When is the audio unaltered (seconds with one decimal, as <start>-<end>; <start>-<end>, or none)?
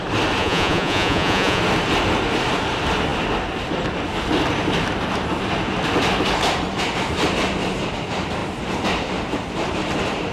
0.0-0.4; 1.6-10.3